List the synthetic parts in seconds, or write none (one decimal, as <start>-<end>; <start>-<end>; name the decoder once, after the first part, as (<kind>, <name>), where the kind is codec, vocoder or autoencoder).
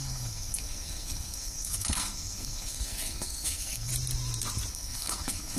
0.0-3.9 (codec, SNAC); 4.7-5.6